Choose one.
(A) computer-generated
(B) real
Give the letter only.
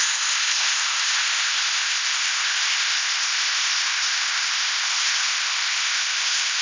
A